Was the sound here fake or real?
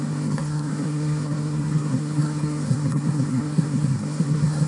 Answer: fake